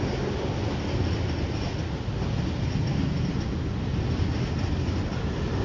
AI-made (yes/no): no